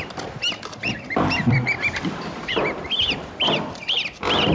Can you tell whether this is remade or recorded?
remade